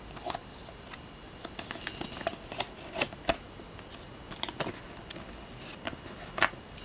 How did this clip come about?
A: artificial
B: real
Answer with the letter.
B